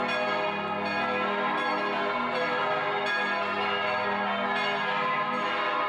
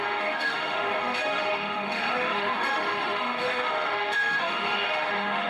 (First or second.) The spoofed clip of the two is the second